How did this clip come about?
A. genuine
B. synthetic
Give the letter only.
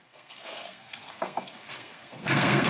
B